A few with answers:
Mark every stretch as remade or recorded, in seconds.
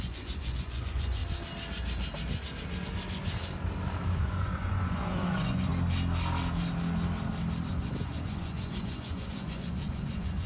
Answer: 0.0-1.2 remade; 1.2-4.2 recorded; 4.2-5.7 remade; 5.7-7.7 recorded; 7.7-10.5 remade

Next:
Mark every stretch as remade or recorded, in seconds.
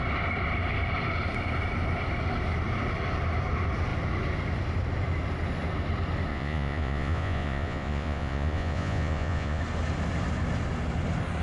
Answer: 0.0-6.3 recorded; 6.3-9.6 remade; 9.6-11.4 recorded